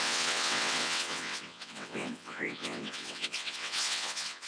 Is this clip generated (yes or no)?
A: yes